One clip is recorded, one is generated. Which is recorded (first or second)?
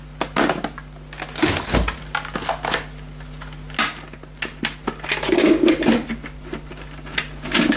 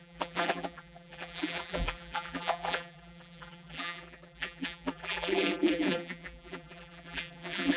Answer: first